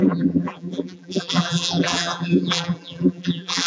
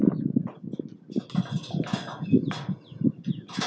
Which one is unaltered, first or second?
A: second